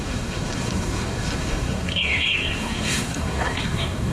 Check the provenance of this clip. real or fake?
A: fake